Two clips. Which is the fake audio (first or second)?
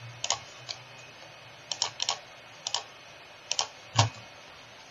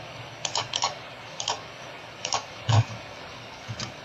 second